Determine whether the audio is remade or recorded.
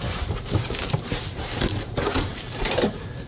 remade